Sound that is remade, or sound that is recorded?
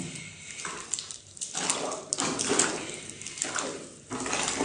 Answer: recorded